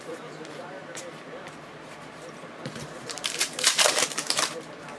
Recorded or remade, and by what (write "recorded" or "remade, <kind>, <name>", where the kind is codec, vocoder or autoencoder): remade, vocoder, BigVGAN v2